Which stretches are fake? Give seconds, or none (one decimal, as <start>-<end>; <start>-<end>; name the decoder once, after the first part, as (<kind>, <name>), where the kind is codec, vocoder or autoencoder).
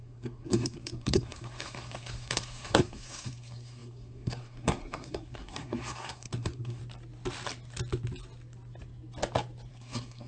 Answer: 0.0-6.8 (codec, SNAC); 9.7-10.3